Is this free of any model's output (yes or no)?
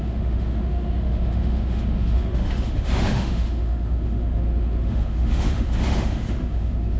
no